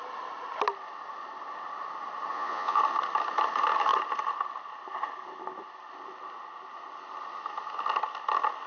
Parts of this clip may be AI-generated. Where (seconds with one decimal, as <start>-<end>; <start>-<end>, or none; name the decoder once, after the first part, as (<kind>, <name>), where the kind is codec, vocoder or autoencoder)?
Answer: 2.3-2.8 (vocoder, Vocos)